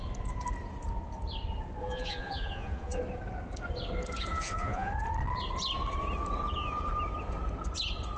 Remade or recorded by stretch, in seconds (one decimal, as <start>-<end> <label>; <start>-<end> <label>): 0.0-1.8 recorded; 1.8-3.0 remade; 3.0-4.3 recorded; 4.3-4.9 remade; 4.9-8.2 recorded

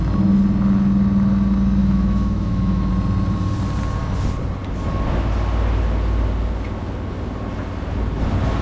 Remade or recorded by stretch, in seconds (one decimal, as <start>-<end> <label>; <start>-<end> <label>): 0.0-1.8 recorded; 1.8-2.9 remade; 2.9-8.6 recorded

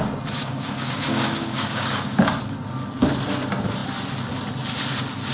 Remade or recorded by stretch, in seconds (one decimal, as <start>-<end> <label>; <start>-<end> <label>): 0.0-0.4 recorded; 0.4-2.3 remade; 2.3-5.3 recorded